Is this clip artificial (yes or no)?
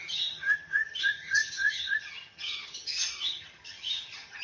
yes